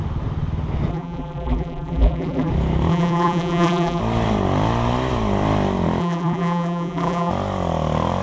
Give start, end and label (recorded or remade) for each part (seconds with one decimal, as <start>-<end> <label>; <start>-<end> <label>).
0.0-0.9 recorded; 0.9-2.5 remade; 2.5-2.9 recorded; 2.9-4.0 remade; 4.0-6.0 recorded; 6.0-7.3 remade; 7.3-8.2 recorded